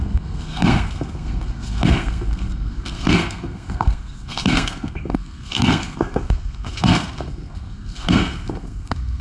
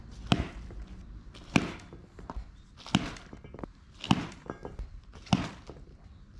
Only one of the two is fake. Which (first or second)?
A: first